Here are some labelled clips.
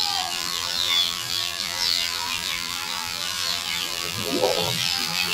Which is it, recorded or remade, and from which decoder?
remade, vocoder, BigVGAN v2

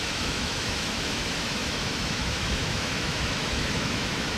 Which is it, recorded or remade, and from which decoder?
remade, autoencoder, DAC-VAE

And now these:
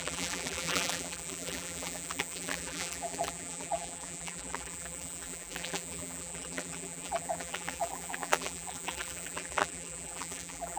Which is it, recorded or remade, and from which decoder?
remade, vocoder, BigVGAN v2